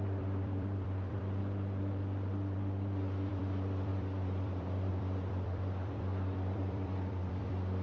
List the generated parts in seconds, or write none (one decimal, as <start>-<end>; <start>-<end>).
0.0-1.4; 3.3-7.8